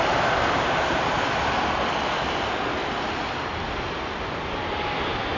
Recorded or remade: recorded